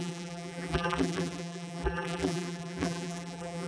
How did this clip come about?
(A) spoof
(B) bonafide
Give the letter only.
A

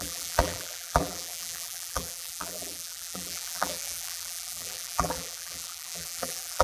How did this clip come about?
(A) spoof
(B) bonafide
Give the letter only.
A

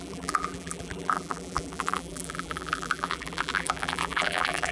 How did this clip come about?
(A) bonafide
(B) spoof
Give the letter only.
B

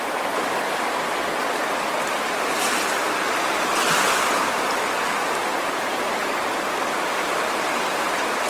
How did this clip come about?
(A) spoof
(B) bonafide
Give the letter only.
A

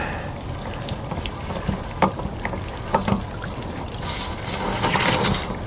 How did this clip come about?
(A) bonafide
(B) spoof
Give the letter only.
B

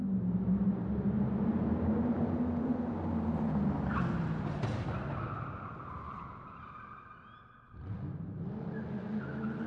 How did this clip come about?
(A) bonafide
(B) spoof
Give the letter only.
A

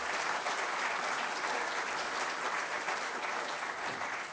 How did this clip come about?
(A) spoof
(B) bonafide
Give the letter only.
A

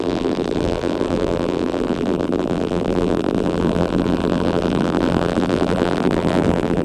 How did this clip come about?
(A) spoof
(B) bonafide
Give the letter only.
A